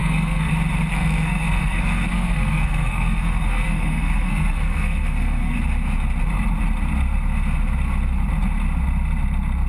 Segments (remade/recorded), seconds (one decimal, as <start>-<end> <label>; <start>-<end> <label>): 0.0-0.5 remade; 0.5-0.9 recorded; 0.9-5.6 remade; 5.6-9.7 recorded

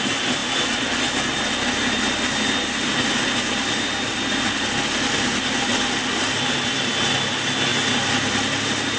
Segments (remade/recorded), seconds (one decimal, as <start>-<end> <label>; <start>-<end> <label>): 0.0-9.0 recorded

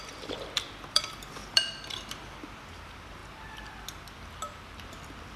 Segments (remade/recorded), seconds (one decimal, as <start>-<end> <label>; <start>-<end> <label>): 0.0-3.2 remade; 3.2-4.9 recorded; 4.9-5.4 remade

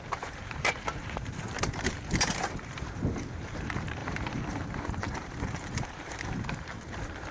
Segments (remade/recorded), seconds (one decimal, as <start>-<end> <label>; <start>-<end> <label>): 0.0-7.3 remade

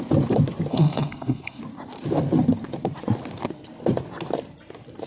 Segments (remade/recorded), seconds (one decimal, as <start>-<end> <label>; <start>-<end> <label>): 0.0-0.7 recorded; 0.7-1.6 remade; 1.6-5.1 recorded

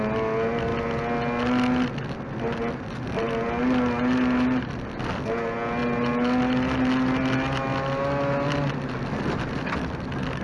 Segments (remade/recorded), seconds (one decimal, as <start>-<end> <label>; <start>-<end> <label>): 0.0-10.4 recorded

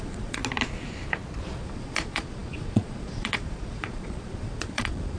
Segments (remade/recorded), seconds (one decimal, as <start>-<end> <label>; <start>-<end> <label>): 0.0-0.4 remade; 0.4-1.6 recorded; 1.6-5.2 remade

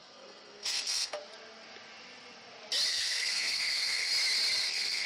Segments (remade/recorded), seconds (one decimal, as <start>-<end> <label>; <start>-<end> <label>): 0.0-1.2 remade; 1.2-2.9 recorded; 2.9-4.1 remade; 4.1-4.6 recorded; 4.6-5.1 remade